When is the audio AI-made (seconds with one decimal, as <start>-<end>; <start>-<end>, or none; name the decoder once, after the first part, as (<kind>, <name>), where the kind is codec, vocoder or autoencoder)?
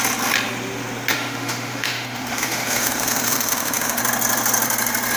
1.1-4.0 (autoencoder, DAC-VAE)